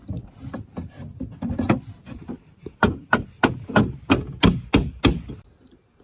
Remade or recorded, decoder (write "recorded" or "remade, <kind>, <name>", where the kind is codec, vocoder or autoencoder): recorded